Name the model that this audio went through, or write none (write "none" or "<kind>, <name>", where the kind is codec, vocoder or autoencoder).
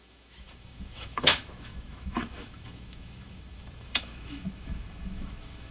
autoencoder, DAC-VAE